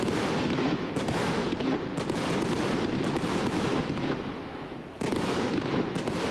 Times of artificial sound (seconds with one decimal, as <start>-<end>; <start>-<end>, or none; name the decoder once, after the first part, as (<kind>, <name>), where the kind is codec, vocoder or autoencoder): 0.0-1.4 (autoencoder, DAC-VAE); 3.3-6.3